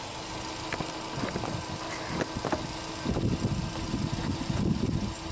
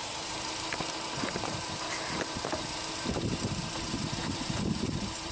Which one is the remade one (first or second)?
second